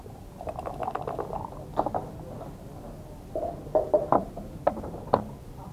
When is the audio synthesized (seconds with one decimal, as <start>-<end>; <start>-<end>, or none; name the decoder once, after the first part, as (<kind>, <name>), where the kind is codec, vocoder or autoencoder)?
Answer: 4.0-5.0 (vocoder, BigVGAN v2)